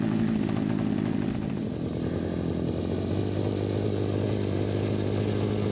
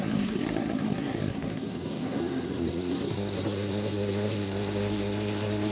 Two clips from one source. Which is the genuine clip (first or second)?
first